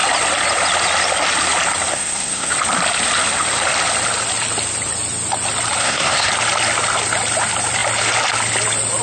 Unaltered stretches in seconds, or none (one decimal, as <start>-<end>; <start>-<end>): 0.0-1.9; 2.5-5.8; 6.3-9.0